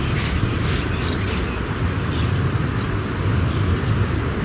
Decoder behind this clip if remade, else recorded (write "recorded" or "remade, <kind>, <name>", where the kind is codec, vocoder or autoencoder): recorded